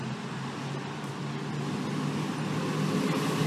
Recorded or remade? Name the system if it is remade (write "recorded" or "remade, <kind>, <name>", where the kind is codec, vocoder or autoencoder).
recorded